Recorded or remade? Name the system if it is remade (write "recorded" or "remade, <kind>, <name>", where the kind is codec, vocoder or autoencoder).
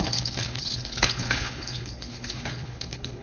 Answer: remade, codec, HILCodec